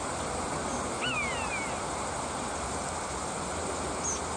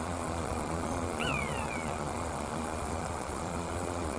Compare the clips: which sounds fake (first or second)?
second